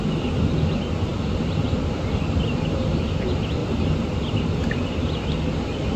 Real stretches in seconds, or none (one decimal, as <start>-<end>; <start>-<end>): 0.0-3.6; 4.4-6.0